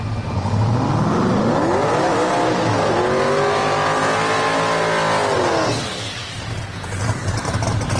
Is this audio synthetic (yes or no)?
no